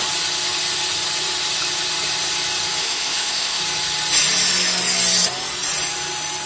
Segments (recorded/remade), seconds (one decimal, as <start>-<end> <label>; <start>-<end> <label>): 0.0-2.8 recorded; 2.8-3.6 remade; 3.6-6.5 recorded